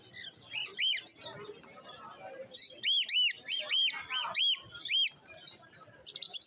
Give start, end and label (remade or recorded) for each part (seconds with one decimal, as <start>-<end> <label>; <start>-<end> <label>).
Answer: 0.0-6.5 recorded